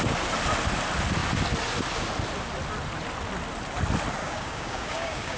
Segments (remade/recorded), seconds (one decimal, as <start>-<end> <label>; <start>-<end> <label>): 0.0-4.2 recorded; 4.2-5.4 remade